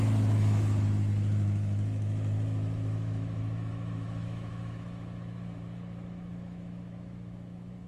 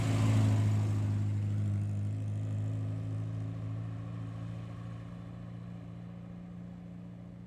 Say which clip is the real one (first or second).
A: second